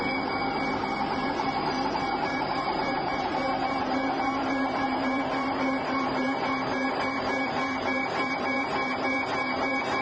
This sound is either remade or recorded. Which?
remade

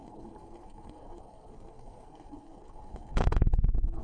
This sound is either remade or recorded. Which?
remade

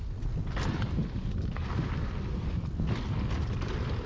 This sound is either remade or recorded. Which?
recorded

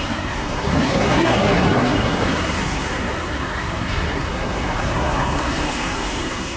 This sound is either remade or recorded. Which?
remade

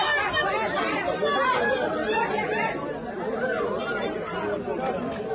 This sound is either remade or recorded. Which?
recorded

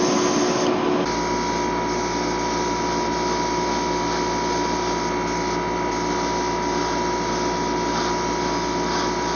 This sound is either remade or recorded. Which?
recorded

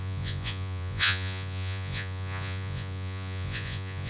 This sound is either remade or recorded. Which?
remade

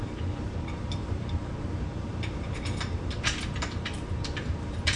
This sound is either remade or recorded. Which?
remade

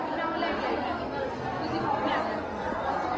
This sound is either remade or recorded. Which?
recorded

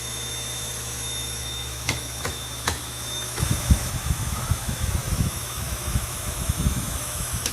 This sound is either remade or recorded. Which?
remade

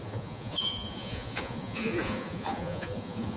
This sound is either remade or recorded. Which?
remade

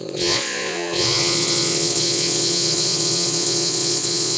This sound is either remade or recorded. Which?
remade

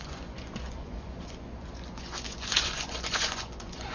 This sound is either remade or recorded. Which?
remade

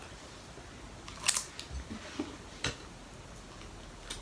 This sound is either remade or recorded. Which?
recorded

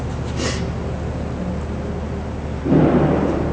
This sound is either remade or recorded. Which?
recorded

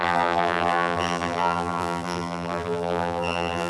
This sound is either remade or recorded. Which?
remade